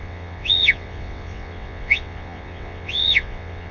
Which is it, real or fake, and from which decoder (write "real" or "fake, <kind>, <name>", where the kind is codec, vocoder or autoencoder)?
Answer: fake, vocoder, WaveNeXt